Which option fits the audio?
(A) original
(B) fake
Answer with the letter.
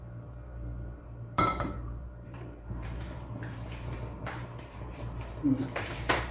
B